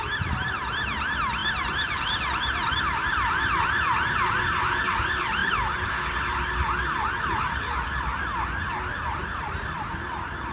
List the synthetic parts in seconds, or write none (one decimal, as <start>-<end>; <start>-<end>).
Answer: none